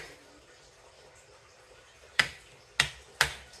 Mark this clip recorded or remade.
recorded